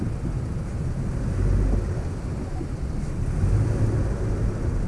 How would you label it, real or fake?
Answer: real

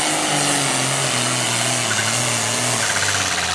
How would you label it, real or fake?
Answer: real